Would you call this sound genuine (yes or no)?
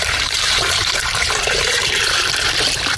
no